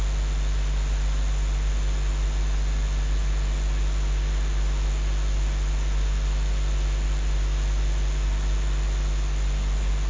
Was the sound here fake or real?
real